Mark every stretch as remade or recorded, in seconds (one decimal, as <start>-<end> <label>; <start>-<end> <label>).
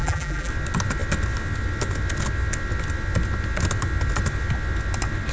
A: 0.0-0.5 remade; 0.5-5.3 recorded